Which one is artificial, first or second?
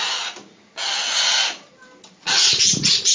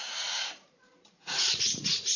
second